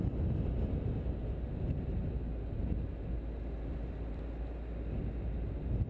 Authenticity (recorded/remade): recorded